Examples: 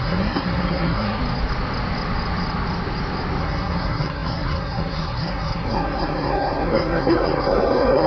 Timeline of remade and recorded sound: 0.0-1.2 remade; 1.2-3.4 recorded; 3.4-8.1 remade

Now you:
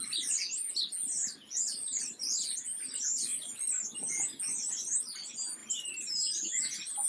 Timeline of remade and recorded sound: 0.0-1.2 recorded; 1.2-2.0 remade; 2.0-5.6 recorded; 5.6-6.1 remade; 6.1-7.1 recorded

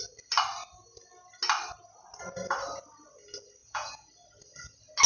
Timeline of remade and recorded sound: 0.0-3.6 recorded; 3.6-4.1 remade; 4.1-5.1 recorded

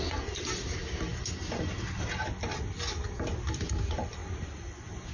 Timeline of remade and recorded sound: 0.0-5.1 recorded

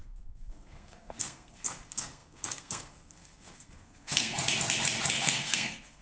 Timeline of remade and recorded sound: 0.0-4.3 remade; 4.3-5.1 recorded; 5.1-6.0 remade

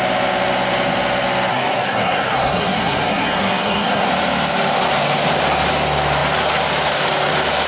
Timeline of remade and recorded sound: 0.0-1.5 recorded; 1.5-4.1 remade; 4.1-7.7 recorded

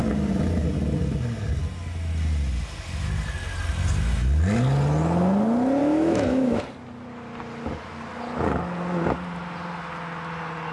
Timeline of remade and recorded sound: 0.0-5.8 recorded; 5.8-6.6 remade; 6.6-10.7 recorded

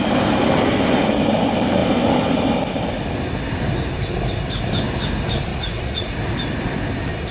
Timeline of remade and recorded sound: 0.0-5.5 recorded; 5.5-6.2 remade; 6.2-7.3 recorded